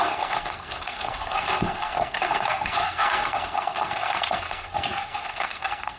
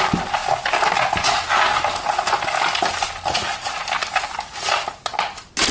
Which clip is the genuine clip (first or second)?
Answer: second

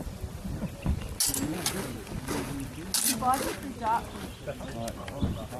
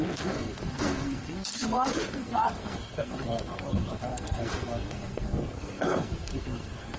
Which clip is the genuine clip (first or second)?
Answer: first